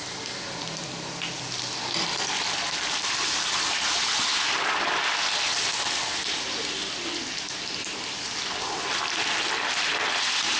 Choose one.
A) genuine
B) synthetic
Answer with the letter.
A